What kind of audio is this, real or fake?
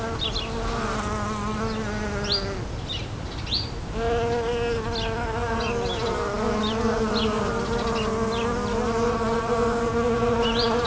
real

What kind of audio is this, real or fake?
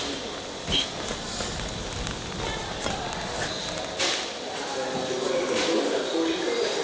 real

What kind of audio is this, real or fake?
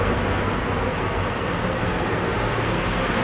fake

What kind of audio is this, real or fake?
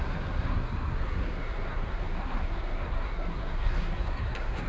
fake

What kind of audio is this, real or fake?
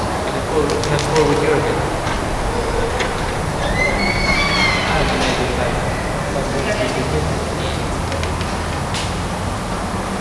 real